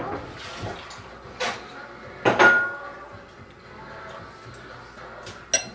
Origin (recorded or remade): recorded